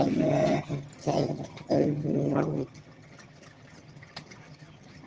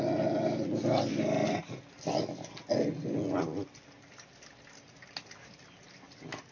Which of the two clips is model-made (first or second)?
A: first